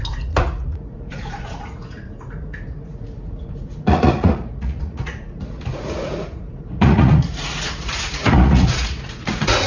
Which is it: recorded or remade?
remade